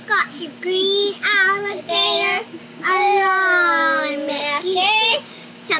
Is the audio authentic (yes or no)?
no